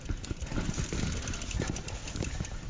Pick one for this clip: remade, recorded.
recorded